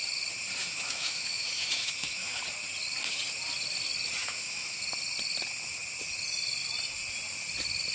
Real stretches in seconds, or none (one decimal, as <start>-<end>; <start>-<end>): 0.0-0.6; 2.4-4.2; 4.8-7.9

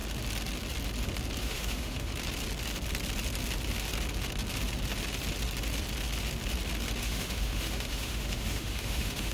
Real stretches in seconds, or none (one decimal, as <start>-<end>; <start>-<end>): 0.0-1.4; 2.1-7.0

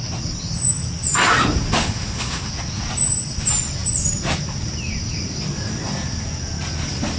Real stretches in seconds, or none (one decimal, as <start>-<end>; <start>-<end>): 0.0-1.8; 2.5-7.2

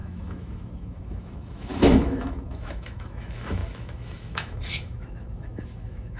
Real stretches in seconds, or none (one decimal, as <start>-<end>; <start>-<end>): none